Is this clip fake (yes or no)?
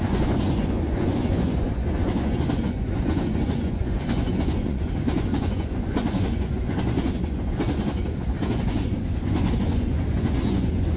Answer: yes